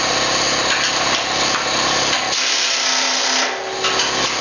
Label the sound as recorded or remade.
recorded